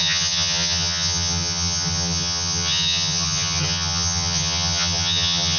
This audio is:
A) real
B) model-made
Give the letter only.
B